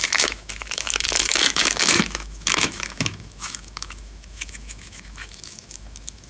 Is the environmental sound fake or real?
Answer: fake